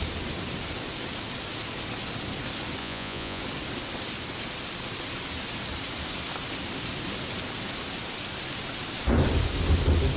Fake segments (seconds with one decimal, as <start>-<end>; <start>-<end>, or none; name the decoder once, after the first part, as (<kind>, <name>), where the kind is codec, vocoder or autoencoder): 2.8-3.4 (vocoder, Vocos)